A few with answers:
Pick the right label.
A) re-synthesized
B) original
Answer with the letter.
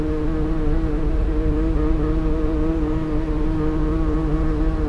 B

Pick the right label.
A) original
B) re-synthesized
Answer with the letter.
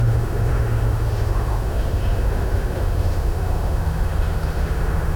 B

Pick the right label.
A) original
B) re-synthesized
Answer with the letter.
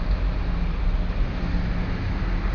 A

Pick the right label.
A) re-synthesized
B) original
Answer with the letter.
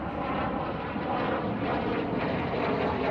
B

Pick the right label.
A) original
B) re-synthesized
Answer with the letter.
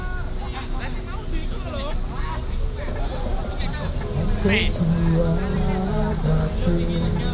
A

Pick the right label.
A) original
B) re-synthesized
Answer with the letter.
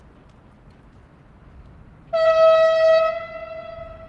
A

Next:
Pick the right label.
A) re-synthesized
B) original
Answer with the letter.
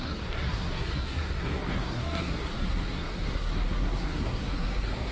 A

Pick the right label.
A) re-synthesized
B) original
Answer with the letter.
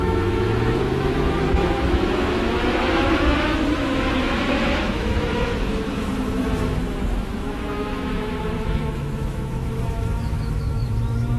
A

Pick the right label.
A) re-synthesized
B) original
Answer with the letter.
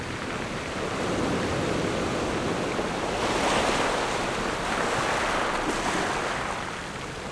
B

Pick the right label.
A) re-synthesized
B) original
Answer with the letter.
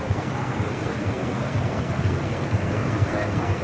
A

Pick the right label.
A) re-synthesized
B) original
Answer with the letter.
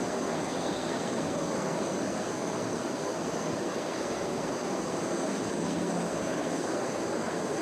A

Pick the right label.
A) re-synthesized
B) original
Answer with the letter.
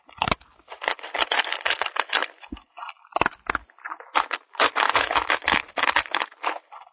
B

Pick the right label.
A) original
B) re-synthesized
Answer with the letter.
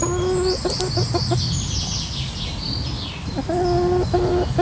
A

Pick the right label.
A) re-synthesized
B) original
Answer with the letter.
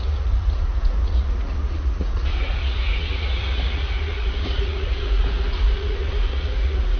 A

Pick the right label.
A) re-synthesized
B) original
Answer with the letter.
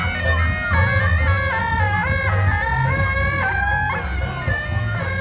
B